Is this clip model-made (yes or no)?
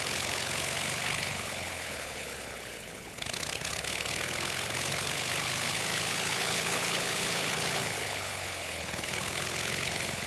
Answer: yes